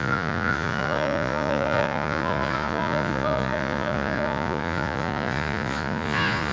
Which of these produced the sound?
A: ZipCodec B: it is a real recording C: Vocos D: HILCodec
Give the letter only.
C